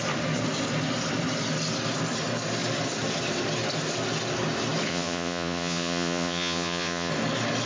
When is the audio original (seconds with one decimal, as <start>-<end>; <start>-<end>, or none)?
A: 0.0-4.9; 7.1-7.7

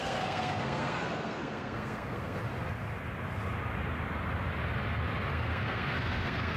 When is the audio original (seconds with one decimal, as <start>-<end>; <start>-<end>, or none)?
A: 2.4-5.3

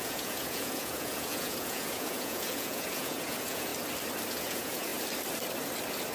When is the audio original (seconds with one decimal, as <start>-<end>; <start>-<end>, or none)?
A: 3.7-4.3; 4.9-6.1

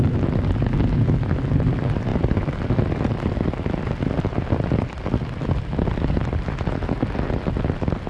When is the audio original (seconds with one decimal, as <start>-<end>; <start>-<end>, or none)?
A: 0.0-8.1

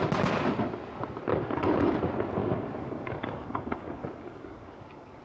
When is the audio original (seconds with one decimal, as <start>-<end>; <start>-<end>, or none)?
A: 0.0-1.3; 1.9-2.4

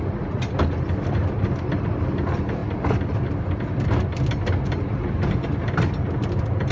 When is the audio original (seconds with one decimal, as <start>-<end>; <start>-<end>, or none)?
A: 0.0-6.7